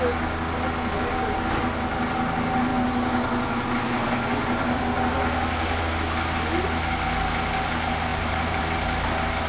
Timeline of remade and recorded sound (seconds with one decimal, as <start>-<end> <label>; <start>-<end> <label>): 0.0-8.1 recorded; 8.1-8.6 remade; 8.6-9.5 recorded